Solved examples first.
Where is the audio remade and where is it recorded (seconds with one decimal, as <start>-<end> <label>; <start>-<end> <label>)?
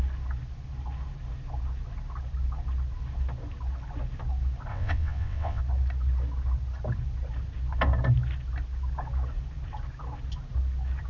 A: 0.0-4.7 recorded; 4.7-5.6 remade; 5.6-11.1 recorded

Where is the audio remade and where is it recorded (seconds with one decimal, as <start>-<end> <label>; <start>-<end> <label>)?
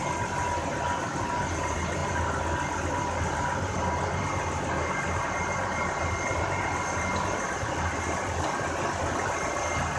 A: 0.0-10.0 recorded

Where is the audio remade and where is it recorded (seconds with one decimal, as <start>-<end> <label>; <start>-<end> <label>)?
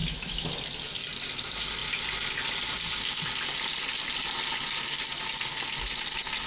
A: 0.0-0.5 remade; 0.5-6.5 recorded